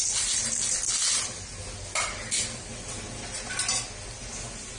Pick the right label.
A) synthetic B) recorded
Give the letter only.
B